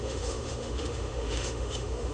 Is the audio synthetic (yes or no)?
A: yes